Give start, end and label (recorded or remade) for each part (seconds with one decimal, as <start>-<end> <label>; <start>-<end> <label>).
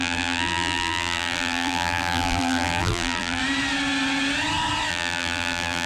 0.0-3.4 remade; 3.4-4.9 recorded; 4.9-5.9 remade